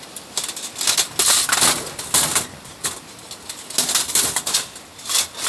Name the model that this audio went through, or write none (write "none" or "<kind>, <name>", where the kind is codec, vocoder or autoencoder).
none